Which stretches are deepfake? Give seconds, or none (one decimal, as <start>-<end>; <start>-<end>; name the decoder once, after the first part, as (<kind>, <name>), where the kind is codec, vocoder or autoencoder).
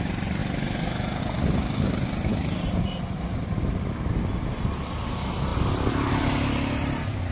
0.0-0.4 (vocoder, BigVGAN v2); 1.2-7.3